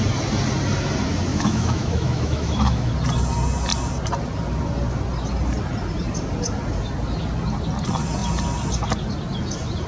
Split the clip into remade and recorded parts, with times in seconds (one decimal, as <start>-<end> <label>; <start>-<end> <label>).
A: 0.0-1.3 recorded; 1.3-2.9 remade; 2.9-9.9 recorded